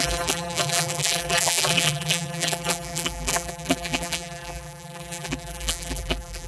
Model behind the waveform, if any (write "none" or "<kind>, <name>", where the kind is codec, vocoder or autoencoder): vocoder, BigVGAN v2